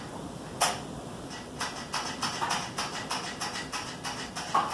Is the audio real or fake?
real